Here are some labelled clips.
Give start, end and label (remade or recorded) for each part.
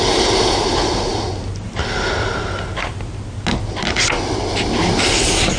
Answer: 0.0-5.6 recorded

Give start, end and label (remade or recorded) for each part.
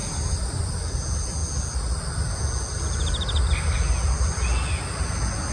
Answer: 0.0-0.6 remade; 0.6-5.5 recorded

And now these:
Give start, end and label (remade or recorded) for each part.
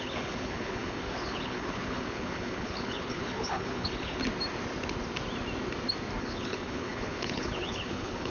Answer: 0.0-4.2 remade; 4.2-6.2 recorded; 6.2-8.3 remade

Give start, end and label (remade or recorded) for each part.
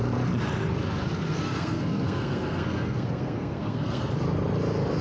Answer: 0.0-1.3 recorded; 1.3-4.1 remade; 4.1-5.0 recorded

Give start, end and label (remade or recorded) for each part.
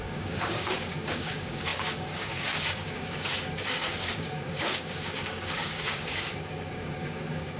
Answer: 0.0-7.6 remade